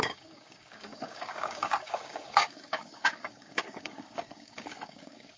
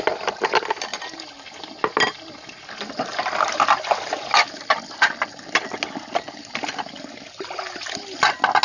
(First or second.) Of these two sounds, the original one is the second